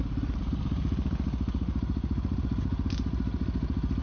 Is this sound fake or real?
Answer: real